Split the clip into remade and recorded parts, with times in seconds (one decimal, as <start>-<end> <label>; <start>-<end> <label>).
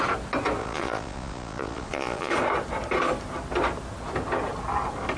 0.0-0.6 recorded; 0.6-2.3 remade; 2.3-5.2 recorded